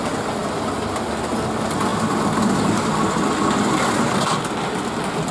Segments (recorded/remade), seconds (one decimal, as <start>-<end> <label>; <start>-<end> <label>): 0.0-5.3 recorded